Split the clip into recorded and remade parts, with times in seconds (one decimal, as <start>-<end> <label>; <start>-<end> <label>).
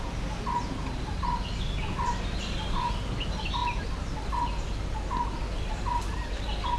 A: 0.0-6.8 recorded